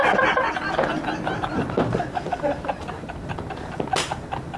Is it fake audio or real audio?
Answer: real